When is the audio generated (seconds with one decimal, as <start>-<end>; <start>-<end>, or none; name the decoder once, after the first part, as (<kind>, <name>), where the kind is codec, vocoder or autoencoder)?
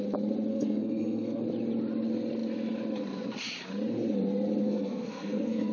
0.5-1.4 (codec, SNAC); 4.6-5.7